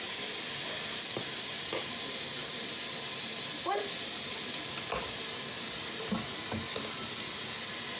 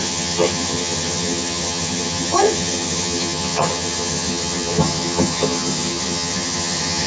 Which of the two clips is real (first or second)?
first